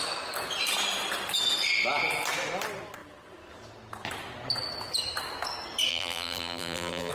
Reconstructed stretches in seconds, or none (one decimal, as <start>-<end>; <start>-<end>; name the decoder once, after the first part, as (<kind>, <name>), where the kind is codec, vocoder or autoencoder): 5.9-7.1 (vocoder, BigVGAN v2)